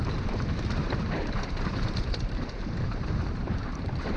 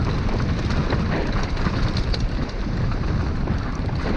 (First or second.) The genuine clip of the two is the second